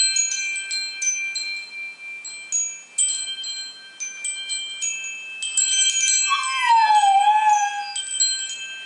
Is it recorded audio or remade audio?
recorded